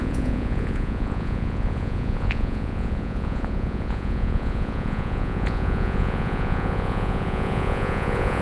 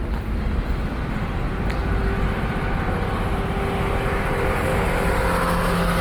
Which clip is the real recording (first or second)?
second